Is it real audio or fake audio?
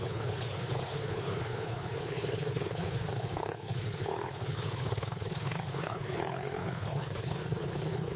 fake